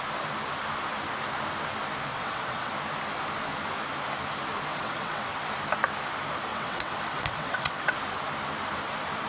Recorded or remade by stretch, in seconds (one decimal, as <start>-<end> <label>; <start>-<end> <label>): 0.0-2.1 recorded; 2.1-2.7 remade; 2.7-4.7 recorded; 4.7-5.3 remade; 5.3-6.5 recorded; 6.5-7.9 remade; 7.9-9.3 recorded